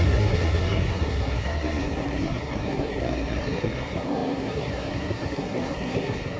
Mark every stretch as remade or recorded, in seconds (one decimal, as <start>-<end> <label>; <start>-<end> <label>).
0.0-6.4 remade